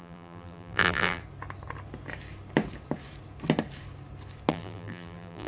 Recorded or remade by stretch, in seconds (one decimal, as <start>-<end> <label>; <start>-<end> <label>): 0.0-1.2 remade; 1.2-4.5 recorded; 4.5-5.5 remade